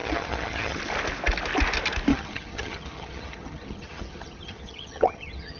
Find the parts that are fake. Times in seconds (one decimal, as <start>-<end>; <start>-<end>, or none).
0.0-0.8; 2.1-5.6